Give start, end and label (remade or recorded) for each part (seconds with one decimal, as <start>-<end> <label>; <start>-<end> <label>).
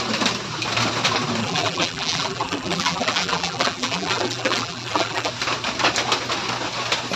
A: 0.0-1.4 recorded; 1.4-5.3 remade; 5.3-7.2 recorded